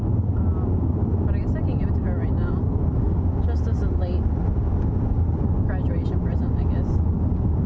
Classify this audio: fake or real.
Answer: real